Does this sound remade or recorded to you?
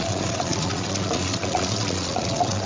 remade